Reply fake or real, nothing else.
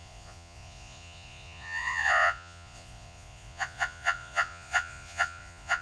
fake